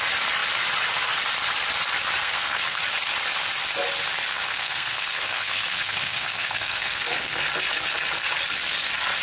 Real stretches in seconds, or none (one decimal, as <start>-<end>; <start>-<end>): 0.0-2.2; 2.8-4.3; 7.4-9.2